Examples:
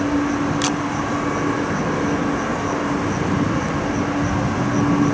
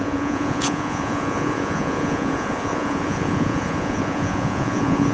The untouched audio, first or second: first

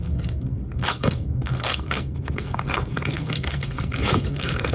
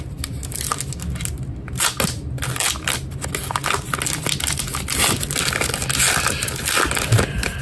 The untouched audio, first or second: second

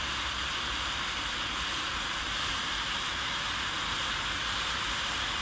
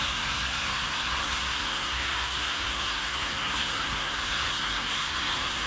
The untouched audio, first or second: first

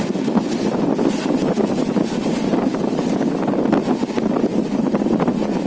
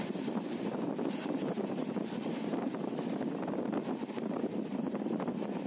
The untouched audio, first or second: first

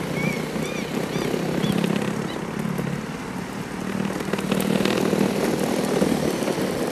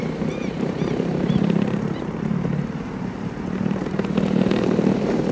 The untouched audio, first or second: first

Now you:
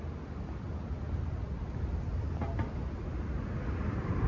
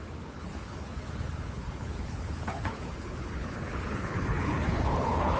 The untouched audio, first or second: first